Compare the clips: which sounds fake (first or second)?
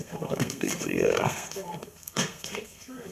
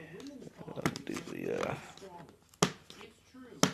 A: first